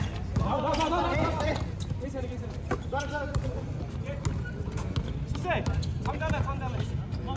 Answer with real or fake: real